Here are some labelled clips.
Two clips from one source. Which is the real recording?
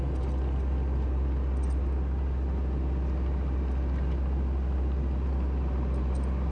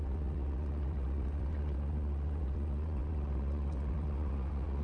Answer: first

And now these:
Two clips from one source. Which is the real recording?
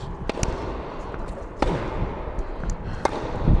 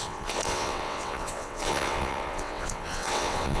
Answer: first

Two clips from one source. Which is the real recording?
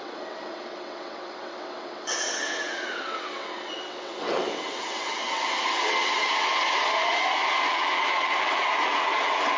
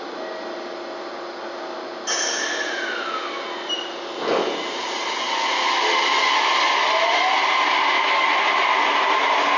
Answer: second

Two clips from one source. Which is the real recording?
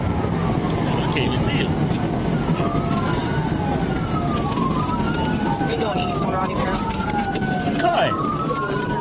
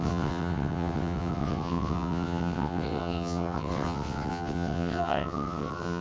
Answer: first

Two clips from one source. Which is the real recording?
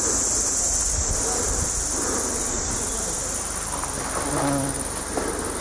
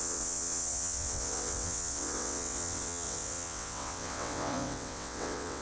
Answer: first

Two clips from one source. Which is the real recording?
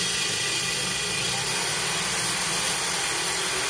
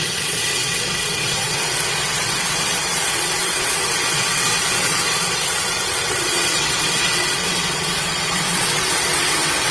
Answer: first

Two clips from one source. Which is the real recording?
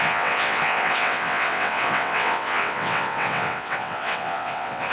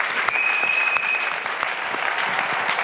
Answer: second